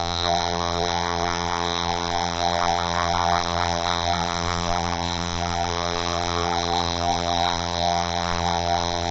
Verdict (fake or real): fake